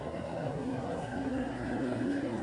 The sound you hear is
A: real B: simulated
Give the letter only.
B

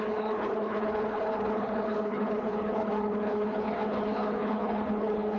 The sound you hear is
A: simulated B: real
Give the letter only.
A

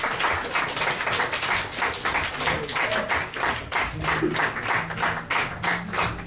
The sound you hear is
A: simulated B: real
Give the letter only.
B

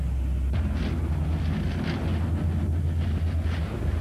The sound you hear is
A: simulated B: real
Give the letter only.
B